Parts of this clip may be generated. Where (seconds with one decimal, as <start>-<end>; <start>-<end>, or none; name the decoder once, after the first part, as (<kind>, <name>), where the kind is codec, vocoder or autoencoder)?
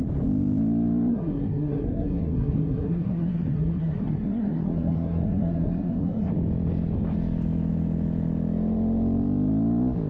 1.1-6.3 (codec, SNAC)